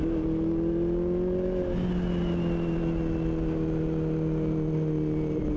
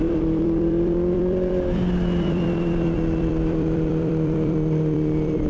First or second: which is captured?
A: first